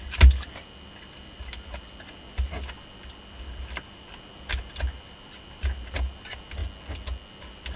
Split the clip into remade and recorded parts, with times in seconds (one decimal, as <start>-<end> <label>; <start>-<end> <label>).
0.0-7.8 recorded